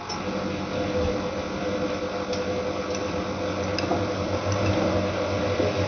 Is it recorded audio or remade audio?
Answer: recorded